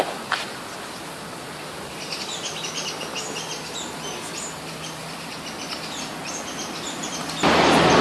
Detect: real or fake real